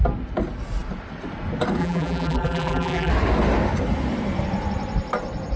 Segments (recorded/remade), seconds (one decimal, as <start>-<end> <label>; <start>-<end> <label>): 0.0-1.8 recorded; 1.8-3.1 remade; 3.1-5.6 recorded